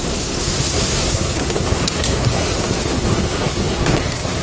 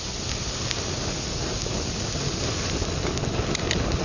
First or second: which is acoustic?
second